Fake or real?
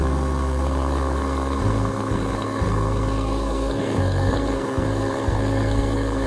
fake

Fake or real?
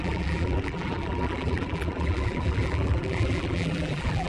fake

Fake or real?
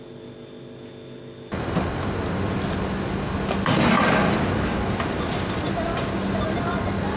real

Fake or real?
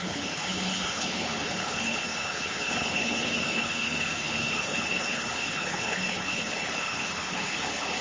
fake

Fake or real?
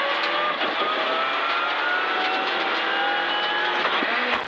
real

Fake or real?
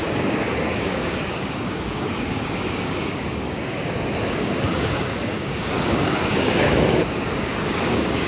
fake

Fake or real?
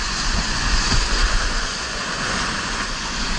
fake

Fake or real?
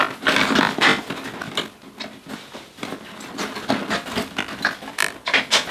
real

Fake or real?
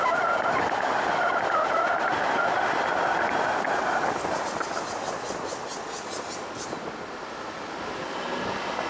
real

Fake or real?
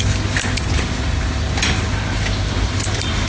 real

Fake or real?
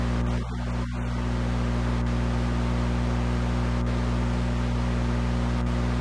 real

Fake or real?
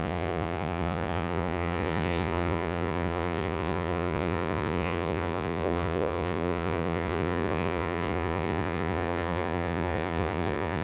fake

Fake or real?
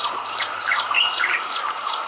fake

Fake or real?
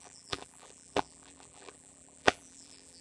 fake